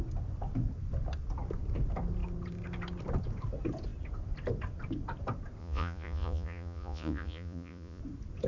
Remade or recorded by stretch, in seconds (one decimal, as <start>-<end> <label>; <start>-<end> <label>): 0.0-5.6 recorded; 5.6-8.0 remade; 8.0-8.5 recorded

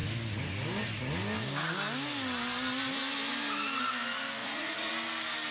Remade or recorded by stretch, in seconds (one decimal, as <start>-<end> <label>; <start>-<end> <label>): 0.0-4.4 recorded; 4.4-4.9 remade; 4.9-5.5 recorded

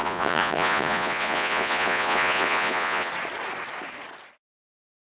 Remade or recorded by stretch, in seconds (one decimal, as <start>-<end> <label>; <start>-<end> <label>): 0.0-3.1 remade; 3.1-5.1 recorded

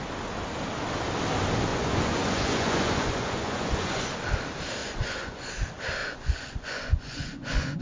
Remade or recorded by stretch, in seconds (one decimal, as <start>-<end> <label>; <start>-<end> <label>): 0.0-1.7 recorded; 1.7-4.1 remade; 4.1-4.8 recorded; 4.8-5.5 remade; 5.5-6.0 recorded; 6.0-7.8 remade

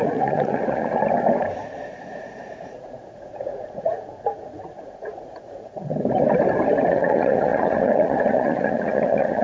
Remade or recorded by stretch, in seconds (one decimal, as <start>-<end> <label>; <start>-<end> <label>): 0.0-1.0 remade; 1.0-1.9 recorded; 1.9-5.9 remade; 5.9-6.9 recorded; 6.9-9.4 remade